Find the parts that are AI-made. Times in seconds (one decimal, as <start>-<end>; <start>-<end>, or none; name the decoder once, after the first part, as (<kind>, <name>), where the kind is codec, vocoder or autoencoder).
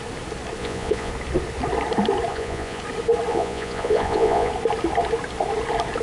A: 0.6-1.1 (vocoder, Vocos); 2.3-2.8; 3.3-4.5